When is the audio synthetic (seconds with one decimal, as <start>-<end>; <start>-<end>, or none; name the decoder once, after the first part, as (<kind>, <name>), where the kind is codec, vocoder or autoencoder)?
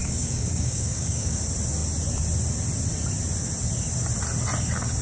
0.0-1.4 (codec, DAC)